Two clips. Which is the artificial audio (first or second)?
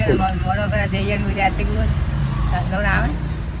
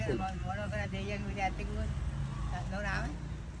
first